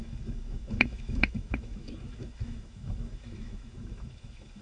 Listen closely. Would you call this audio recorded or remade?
remade